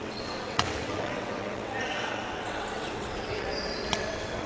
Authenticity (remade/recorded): remade